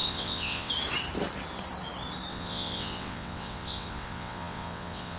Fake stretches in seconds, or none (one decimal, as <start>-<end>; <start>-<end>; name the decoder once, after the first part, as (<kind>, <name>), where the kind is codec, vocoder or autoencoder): 0.0-0.7 (vocoder, WaveNeXt); 2.3-5.2